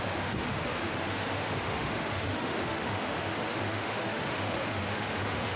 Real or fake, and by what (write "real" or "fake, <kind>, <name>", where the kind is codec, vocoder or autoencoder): fake, autoencoder, DAC-VAE